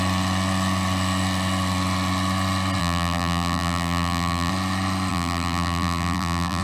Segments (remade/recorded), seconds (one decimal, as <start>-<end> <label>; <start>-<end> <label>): 0.0-2.8 recorded; 2.8-4.5 remade; 4.5-5.1 recorded; 5.1-6.6 remade